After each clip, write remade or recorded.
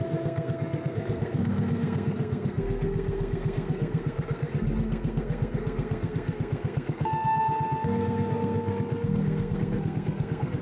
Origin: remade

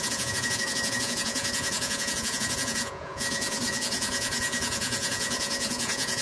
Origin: remade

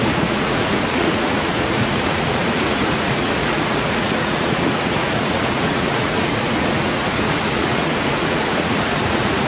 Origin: remade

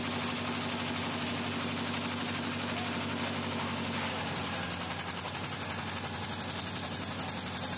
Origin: recorded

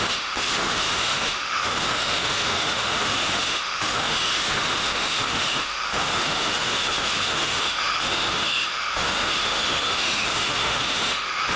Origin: remade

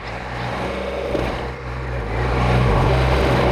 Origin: recorded